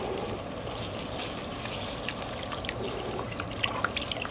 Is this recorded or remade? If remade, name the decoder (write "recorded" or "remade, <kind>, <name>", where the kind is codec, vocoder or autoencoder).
recorded